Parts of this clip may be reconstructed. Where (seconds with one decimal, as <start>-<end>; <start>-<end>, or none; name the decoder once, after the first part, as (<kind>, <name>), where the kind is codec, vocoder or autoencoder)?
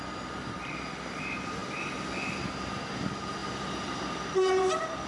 3.4-4.2 (vocoder, BigVGAN v2)